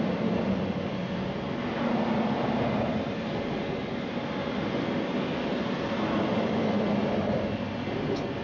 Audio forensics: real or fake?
real